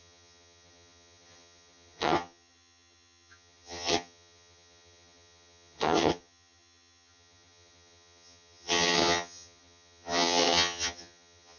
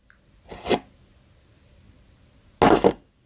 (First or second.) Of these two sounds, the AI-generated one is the first